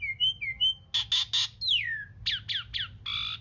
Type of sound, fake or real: real